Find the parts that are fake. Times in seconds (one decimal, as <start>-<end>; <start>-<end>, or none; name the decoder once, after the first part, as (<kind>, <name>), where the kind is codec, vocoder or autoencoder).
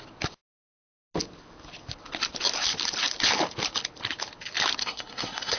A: 4.8-5.6 (codec, SNAC)